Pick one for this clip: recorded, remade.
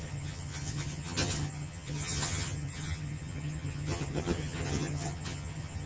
remade